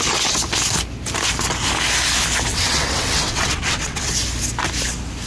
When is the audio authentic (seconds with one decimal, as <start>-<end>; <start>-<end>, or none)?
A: 0.0-2.5; 4.1-5.3

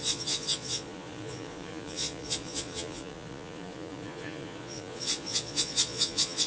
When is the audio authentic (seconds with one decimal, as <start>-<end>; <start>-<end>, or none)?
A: none